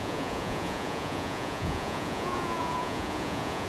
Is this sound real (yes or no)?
no